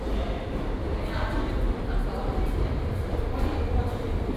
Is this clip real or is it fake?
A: fake